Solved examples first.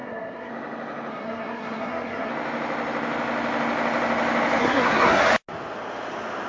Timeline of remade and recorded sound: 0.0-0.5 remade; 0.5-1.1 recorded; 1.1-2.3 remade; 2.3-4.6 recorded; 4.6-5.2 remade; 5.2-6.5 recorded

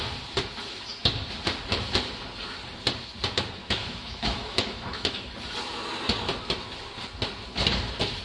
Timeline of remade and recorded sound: 0.0-3.6 recorded; 3.6-5.3 remade; 5.3-8.2 recorded

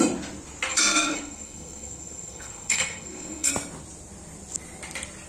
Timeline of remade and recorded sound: 0.0-0.7 recorded; 0.7-3.5 remade; 3.5-5.3 recorded